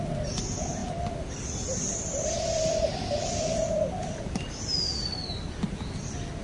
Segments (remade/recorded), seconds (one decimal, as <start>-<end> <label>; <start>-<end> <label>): 0.0-0.8 recorded; 0.8-4.6 remade; 4.6-6.4 recorded